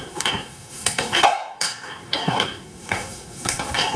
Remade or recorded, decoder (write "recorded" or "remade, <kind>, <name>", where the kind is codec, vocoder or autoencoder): remade, codec, SNAC